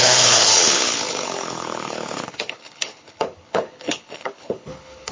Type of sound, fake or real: fake